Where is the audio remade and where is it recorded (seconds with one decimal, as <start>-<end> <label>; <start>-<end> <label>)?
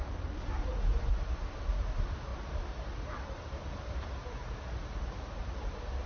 0.0-6.1 recorded